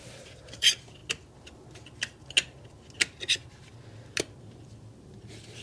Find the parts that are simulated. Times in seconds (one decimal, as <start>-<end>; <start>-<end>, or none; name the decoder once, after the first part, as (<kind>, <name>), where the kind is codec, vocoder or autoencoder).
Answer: 0.0-1.0 (vocoder, BigVGAN v2); 4.4-5.6